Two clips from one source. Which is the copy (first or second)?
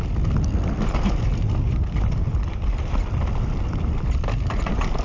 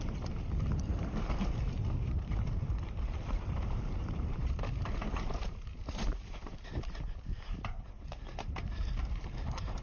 second